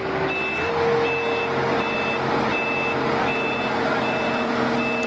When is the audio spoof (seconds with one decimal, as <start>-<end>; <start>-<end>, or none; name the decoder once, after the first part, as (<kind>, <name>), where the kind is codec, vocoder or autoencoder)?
none